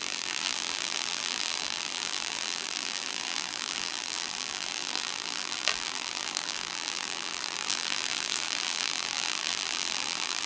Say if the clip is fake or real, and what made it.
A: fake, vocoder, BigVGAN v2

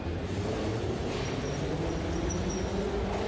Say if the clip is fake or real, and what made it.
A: real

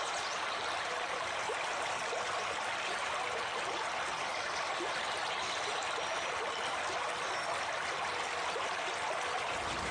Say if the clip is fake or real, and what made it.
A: real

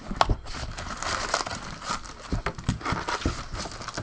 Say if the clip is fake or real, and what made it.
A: real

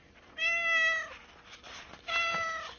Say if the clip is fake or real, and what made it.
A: real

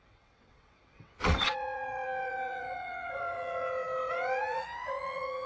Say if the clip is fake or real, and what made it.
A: fake, vocoder, WaveNeXt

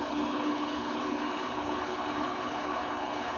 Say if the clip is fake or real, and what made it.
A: fake, codec, HILCodec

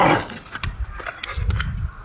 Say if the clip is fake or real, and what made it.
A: real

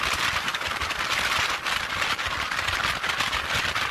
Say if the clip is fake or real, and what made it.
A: real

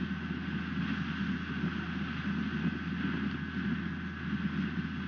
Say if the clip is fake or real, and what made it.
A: real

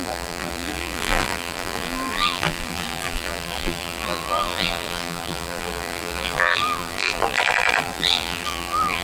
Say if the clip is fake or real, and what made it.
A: fake, vocoder, BigVGAN v2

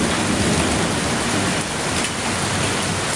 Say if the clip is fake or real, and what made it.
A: real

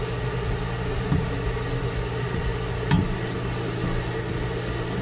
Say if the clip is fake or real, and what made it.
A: real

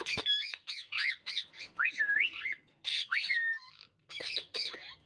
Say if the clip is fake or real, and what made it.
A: fake, codec, SNAC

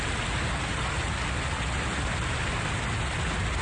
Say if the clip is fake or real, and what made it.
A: real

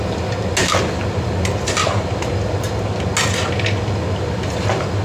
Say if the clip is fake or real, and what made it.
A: real